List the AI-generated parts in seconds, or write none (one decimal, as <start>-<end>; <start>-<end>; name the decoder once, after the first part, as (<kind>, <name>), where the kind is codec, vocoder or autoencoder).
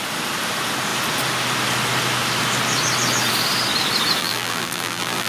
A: 4.2-5.3 (vocoder, BigVGAN v2)